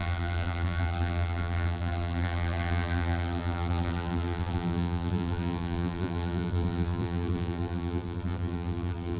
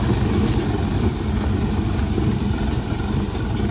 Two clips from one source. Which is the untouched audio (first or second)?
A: second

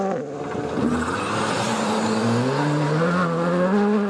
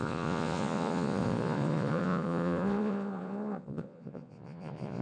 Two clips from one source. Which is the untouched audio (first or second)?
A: first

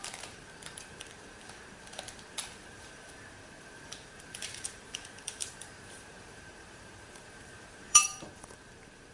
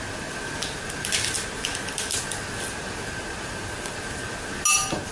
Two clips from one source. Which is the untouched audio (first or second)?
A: second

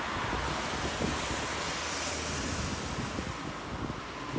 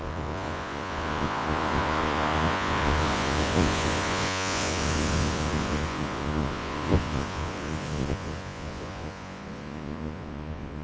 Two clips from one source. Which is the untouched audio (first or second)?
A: first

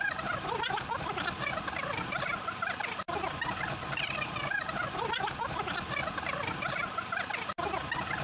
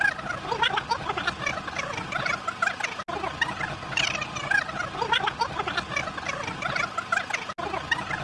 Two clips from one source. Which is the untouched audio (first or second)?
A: second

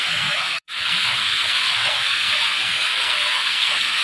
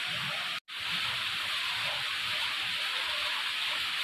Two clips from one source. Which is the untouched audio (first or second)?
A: second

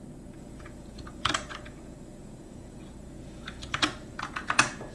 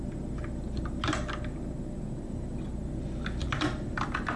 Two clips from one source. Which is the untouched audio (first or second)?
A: second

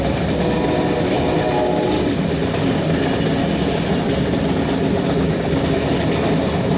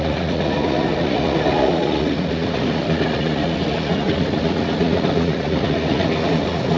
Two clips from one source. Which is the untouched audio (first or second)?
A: first